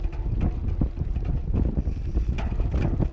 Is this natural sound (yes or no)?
yes